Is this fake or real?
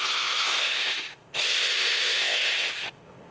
fake